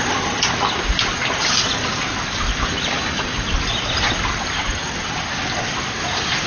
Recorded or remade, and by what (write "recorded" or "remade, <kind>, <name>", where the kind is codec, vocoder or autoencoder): recorded